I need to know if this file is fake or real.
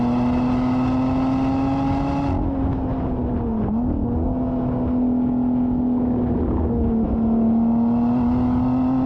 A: real